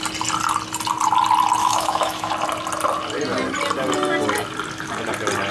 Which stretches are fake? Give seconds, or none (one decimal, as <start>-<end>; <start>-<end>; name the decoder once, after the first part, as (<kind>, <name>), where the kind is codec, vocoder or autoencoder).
1.6-2.3 (autoencoder, DAC-VAE)